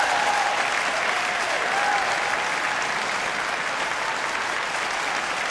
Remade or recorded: recorded